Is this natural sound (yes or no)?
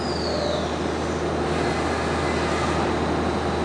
yes